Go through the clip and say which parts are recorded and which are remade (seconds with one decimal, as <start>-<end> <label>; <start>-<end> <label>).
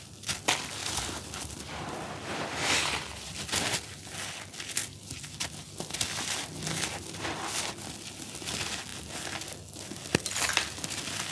0.0-0.8 recorded; 0.8-3.1 remade; 3.1-11.3 recorded